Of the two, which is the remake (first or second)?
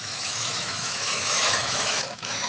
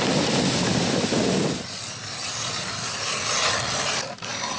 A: first